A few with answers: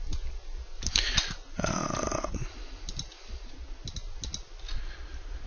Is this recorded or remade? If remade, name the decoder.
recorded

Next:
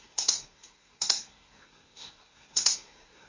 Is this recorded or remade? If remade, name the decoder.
remade, codec, SNAC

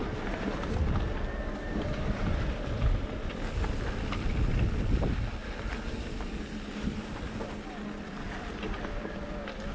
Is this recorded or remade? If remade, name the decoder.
recorded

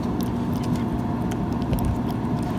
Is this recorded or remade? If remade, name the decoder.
recorded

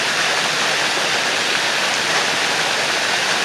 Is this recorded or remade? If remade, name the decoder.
recorded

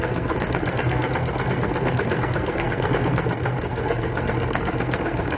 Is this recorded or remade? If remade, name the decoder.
remade, codec, SNAC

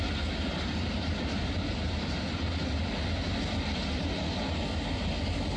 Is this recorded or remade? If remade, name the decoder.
recorded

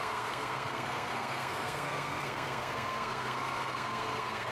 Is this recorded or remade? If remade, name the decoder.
remade, codec, SNAC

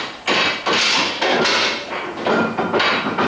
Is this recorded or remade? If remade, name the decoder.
recorded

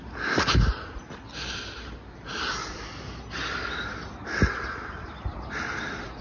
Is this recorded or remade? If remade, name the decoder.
recorded